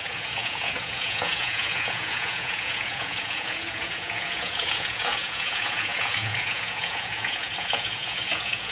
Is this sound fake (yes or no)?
yes